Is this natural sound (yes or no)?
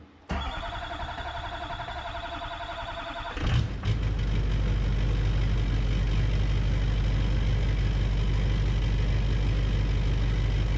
yes